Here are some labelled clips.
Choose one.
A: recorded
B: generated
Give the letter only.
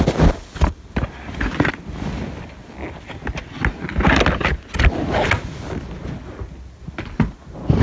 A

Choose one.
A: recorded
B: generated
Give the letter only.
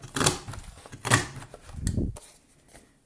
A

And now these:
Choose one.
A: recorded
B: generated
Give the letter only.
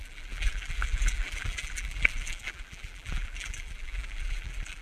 B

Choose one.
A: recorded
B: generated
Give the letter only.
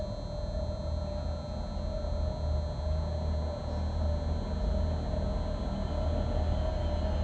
A